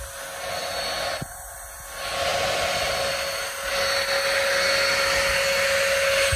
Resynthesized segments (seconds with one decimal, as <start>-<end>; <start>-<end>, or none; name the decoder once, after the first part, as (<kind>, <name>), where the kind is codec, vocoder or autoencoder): none